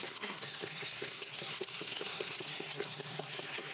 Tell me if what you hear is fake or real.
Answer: fake